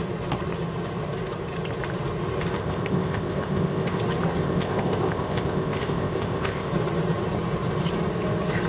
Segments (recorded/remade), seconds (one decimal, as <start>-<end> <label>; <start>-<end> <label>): 0.0-2.6 recorded; 2.6-4.0 remade; 4.0-4.4 recorded; 4.4-6.7 remade; 6.7-8.7 recorded